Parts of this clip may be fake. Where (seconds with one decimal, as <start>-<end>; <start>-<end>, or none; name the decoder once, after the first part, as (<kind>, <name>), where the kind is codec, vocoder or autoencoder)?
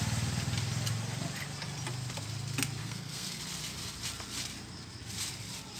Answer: 2.8-3.4 (codec, SNAC)